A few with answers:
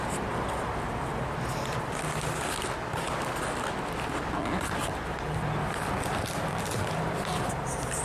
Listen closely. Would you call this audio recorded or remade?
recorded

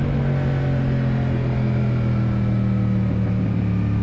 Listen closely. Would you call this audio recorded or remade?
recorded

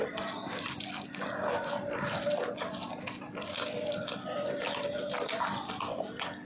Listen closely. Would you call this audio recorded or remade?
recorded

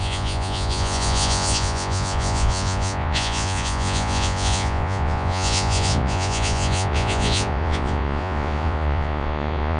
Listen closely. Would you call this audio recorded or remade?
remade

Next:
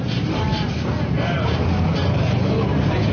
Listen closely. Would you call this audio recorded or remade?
recorded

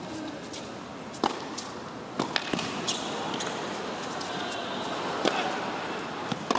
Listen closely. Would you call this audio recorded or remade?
recorded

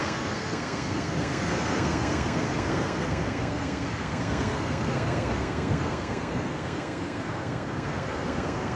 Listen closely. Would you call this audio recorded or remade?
remade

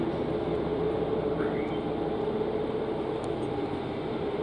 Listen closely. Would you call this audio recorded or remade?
recorded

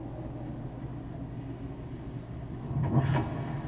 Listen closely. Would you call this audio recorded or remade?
recorded